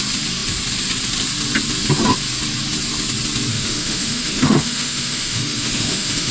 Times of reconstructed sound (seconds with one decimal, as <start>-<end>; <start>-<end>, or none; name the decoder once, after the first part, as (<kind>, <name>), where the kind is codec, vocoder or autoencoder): 3.5-6.3 (autoencoder, DAC-VAE)